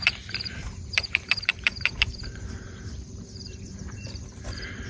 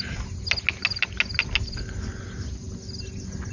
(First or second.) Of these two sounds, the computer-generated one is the first